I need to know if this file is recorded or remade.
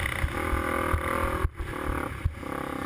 recorded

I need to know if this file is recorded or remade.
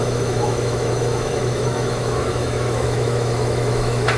remade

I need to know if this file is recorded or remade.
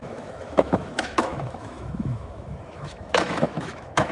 remade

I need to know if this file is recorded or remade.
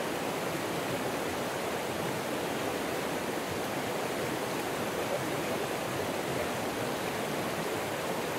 recorded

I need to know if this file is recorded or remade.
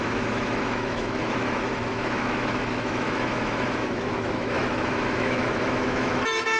remade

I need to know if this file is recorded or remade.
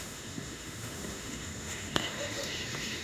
remade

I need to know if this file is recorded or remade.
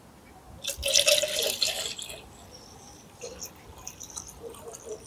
recorded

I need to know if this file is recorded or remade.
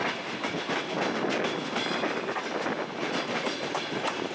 recorded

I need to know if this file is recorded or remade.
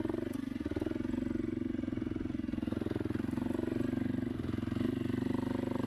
recorded